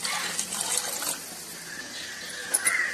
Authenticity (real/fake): real